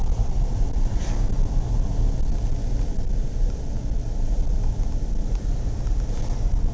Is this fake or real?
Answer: real